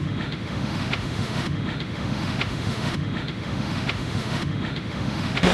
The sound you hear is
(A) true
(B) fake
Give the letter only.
B